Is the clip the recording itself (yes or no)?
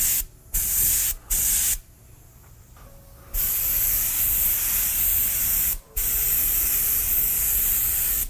yes